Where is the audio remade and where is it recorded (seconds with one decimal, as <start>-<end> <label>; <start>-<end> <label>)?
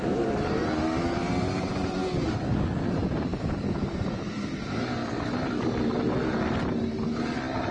0.0-2.0 remade; 2.0-2.8 recorded; 2.8-5.0 remade; 5.0-7.7 recorded